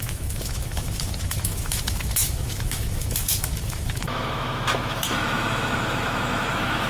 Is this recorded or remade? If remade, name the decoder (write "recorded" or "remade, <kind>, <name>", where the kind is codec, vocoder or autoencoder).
remade, autoencoder, DAC-VAE